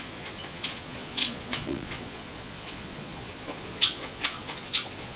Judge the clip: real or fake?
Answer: fake